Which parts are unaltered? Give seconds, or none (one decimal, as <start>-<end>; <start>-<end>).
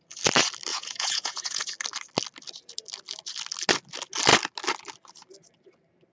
0.0-0.7; 1.7-6.1